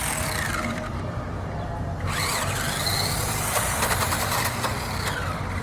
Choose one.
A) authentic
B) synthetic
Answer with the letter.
B